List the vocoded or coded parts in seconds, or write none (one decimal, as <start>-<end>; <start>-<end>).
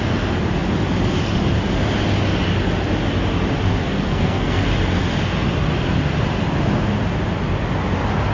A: 3.8-4.7